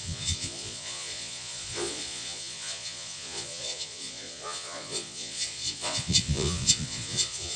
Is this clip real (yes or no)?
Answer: no